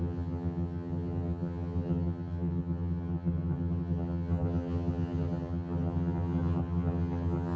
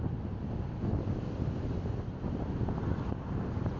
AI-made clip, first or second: first